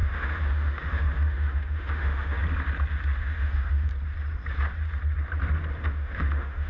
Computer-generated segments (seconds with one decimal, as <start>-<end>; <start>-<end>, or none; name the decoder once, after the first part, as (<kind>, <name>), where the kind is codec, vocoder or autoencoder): 0.0-2.4 (autoencoder, DAC-VAE); 2.9-3.9; 5.8-6.7